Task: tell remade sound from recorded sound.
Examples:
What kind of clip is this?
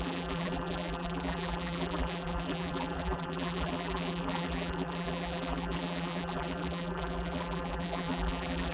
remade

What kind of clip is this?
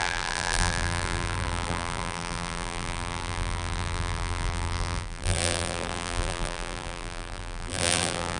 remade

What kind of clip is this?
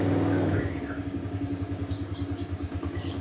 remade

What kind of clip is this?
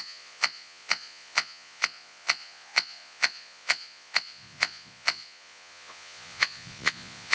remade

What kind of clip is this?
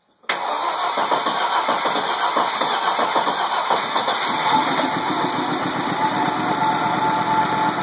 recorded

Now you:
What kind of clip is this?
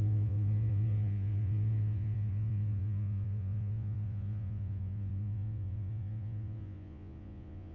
remade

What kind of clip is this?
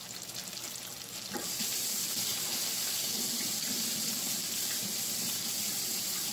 recorded